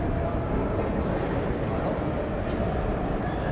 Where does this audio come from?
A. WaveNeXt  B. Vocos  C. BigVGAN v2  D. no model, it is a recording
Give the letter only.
D